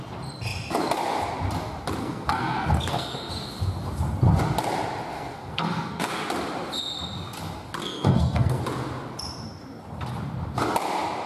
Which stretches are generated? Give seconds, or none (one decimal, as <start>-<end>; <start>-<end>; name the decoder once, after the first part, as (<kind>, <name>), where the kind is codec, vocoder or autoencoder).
2.0-3.3 (codec, SNAC); 5.1-6.1; 7.8-8.6